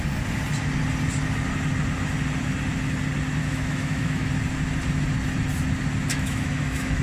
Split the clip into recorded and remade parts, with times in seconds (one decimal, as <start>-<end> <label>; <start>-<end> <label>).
0.0-3.4 recorded; 3.4-4.3 remade; 4.3-6.1 recorded; 6.1-7.0 remade